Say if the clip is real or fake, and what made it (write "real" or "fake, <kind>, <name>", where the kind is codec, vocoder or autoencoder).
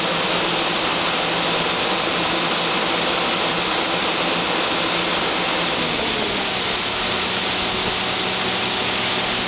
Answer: real